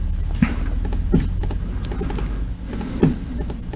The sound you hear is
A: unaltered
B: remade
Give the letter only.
A